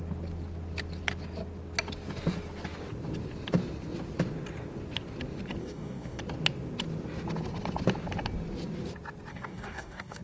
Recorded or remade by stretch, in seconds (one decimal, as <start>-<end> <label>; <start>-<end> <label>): 0.0-5.6 recorded; 5.6-6.2 remade; 6.2-9.3 recorded; 9.3-10.2 remade